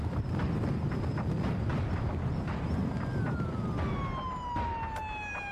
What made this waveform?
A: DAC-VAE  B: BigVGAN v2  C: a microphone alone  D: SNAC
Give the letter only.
C